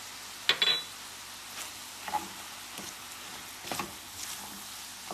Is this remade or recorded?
recorded